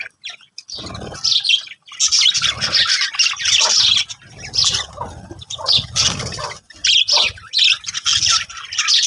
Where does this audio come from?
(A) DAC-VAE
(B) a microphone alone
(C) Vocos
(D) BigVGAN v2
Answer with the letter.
B